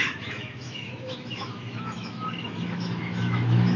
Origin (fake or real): fake